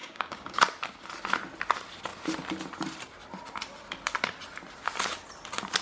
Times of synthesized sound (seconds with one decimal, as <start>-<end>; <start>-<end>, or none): 0.0-0.6